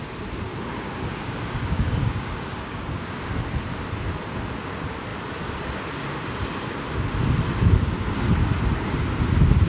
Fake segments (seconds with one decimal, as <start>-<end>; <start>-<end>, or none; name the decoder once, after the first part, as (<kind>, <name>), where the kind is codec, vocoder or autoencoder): 0.5-3.1 (codec, DAC)